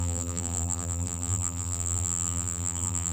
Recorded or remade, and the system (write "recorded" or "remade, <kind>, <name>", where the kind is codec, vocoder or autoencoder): remade, vocoder, BigVGAN v2